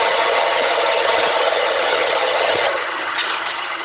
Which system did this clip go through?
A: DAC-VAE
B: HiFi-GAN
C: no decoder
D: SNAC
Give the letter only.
B